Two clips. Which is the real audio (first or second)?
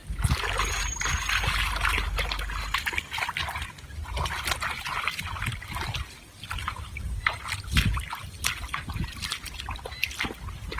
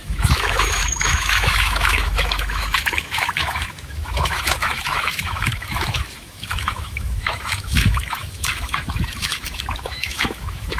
first